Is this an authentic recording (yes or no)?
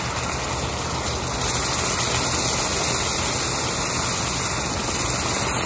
yes